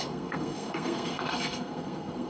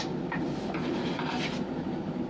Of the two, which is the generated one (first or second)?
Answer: first